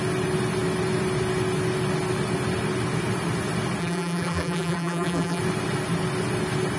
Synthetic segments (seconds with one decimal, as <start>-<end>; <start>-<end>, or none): 3.8-5.4